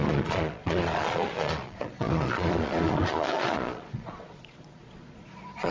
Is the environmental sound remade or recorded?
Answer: remade